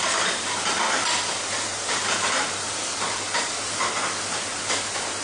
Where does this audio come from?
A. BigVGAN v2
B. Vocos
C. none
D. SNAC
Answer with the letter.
A